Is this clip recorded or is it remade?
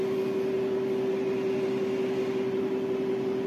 recorded